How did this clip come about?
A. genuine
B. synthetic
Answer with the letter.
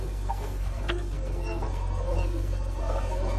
B